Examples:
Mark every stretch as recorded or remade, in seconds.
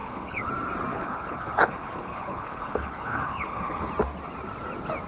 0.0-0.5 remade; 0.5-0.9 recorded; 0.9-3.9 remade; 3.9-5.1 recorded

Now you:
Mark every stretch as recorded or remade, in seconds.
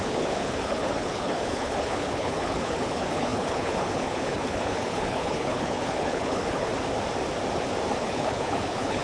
0.0-6.7 remade; 6.7-8.0 recorded; 8.0-9.0 remade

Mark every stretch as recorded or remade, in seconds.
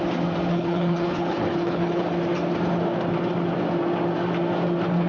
0.0-0.5 recorded; 0.5-2.0 remade; 2.0-5.1 recorded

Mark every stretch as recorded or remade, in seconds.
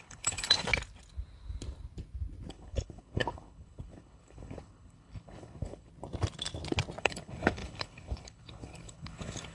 0.0-0.7 remade; 0.7-2.5 recorded; 2.5-5.9 remade; 5.9-7.0 recorded; 7.0-9.5 remade